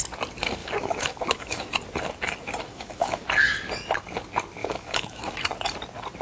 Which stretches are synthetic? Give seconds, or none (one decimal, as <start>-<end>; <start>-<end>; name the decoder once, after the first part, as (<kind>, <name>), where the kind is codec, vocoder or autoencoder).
0.6-1.7 (autoencoder, DAC-VAE); 2.7-3.2; 4.6-5.4